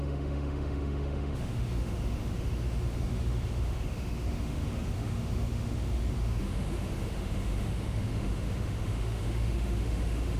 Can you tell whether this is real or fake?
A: fake